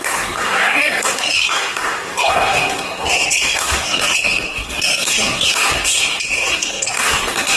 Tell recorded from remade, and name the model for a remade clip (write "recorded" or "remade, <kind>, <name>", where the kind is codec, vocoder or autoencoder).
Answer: remade, codec, SNAC